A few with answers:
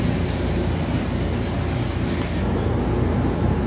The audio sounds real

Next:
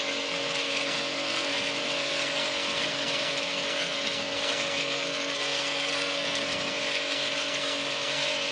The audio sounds fake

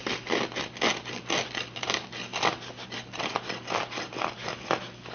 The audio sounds real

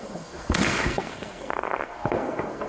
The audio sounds fake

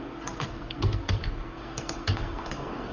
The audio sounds fake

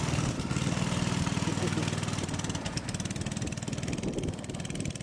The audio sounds real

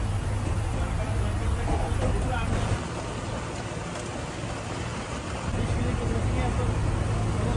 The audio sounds real